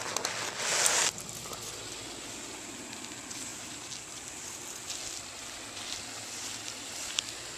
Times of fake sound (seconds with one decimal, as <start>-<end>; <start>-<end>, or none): none